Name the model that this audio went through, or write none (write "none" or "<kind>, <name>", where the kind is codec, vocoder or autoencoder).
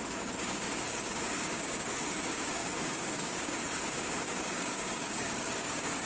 codec, DAC